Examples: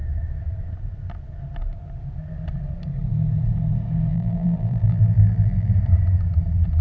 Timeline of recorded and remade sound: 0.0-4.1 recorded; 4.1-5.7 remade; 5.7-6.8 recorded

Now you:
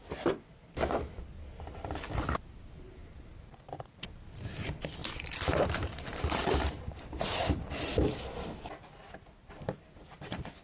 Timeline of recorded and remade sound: 0.0-3.0 recorded; 3.0-4.3 remade; 4.3-5.0 recorded; 5.0-7.7 remade; 7.7-10.6 recorded

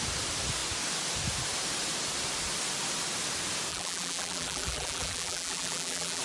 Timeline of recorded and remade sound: 0.0-3.7 recorded; 3.7-6.2 remade